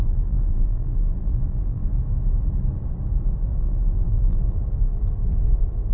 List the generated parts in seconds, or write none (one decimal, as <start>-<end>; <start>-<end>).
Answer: 0.0-1.8; 3.6-4.6